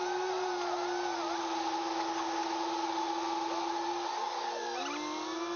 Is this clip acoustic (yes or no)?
yes